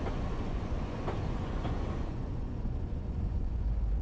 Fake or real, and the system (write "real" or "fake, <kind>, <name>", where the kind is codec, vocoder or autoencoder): fake, vocoder, Vocos